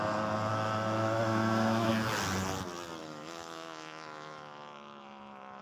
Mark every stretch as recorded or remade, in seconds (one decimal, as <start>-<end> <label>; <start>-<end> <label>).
0.0-0.5 recorded; 0.5-1.9 remade; 1.9-3.0 recorded; 3.0-5.6 remade